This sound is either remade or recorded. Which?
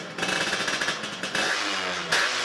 remade